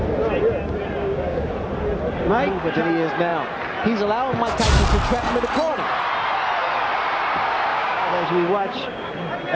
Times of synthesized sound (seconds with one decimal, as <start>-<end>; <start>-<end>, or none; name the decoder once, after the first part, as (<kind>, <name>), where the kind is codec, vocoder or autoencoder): 1.0-1.5 (codec, DAC); 7.7-9.1